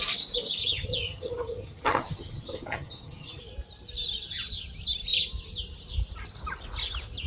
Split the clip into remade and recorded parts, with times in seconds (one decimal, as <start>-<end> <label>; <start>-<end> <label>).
0.0-0.6 recorded; 0.6-3.4 remade; 3.4-7.3 recorded